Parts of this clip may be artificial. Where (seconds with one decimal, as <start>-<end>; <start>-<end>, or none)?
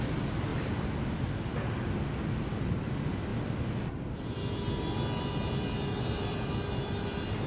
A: 0.5-1.1